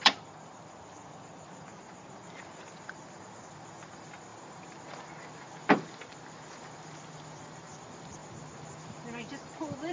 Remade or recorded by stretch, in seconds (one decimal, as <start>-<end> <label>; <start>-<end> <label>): 0.0-8.2 remade; 8.2-8.8 recorded; 8.8-9.9 remade

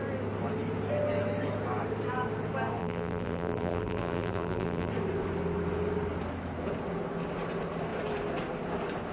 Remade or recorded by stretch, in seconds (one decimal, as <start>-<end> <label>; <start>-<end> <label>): 0.0-2.8 recorded; 2.8-4.9 remade; 4.9-9.1 recorded

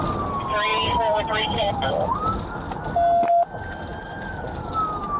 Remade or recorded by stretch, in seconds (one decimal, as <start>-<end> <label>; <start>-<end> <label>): 0.0-0.7 recorded; 0.7-2.4 remade; 2.4-3.9 recorded; 3.9-4.7 remade; 4.7-5.2 recorded

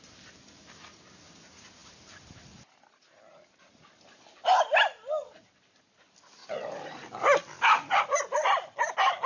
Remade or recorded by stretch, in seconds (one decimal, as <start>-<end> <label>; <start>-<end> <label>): 0.0-6.4 recorded; 6.4-8.0 remade; 8.0-9.3 recorded